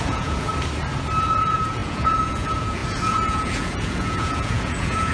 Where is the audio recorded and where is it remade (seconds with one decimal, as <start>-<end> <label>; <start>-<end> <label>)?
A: 0.0-0.5 remade; 0.5-1.2 recorded; 1.2-5.1 remade